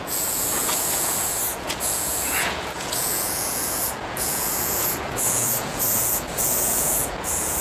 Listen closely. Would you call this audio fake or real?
fake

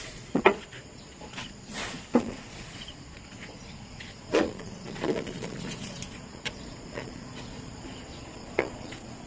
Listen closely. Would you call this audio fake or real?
fake